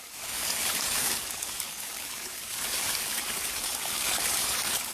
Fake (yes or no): yes